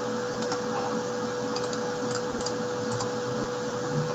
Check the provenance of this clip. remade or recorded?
recorded